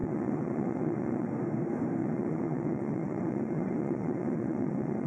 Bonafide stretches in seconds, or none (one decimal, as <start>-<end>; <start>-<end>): 1.3-2.0